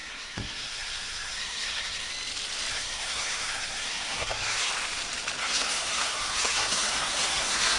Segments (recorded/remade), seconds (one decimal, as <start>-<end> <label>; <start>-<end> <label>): 0.0-2.1 remade; 2.1-2.7 recorded; 2.7-4.7 remade; 4.7-5.4 recorded; 5.4-7.8 remade